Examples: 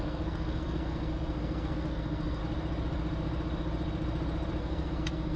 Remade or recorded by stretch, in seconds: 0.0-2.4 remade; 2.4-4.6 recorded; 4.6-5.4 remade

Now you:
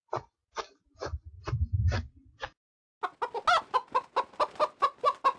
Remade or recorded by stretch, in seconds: 0.0-5.4 recorded